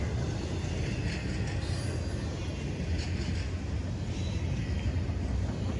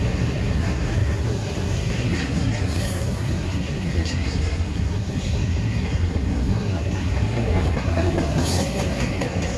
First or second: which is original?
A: first